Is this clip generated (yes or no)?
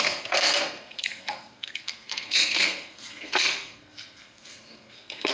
yes